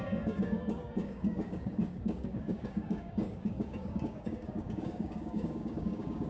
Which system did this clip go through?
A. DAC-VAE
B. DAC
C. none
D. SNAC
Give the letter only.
B